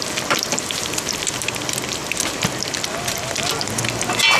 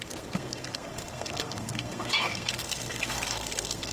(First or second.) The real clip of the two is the first